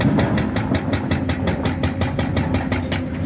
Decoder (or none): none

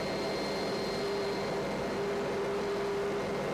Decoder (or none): none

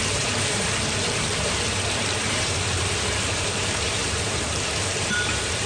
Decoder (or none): vocoder, BigVGAN v2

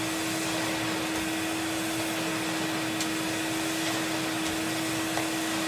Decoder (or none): none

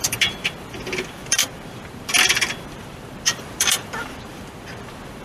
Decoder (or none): vocoder, BigVGAN v2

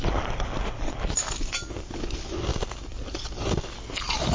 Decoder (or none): none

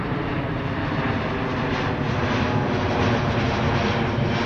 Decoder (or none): none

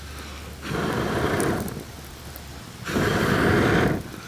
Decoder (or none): none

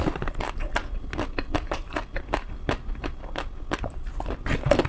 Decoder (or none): none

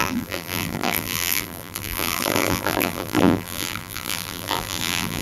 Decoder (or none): vocoder, BigVGAN v2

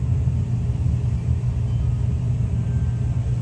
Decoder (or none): none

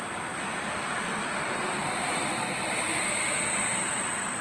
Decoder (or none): vocoder, BigVGAN v2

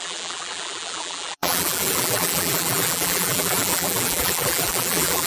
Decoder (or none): vocoder, BigVGAN v2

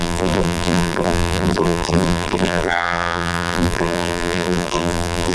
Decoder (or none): vocoder, BigVGAN v2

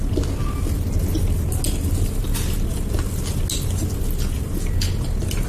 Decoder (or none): none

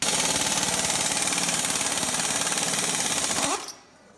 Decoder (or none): none